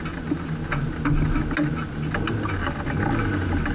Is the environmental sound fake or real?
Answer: real